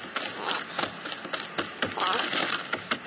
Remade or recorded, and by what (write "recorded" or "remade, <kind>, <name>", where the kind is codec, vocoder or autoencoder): recorded